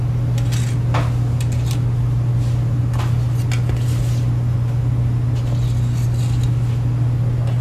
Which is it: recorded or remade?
recorded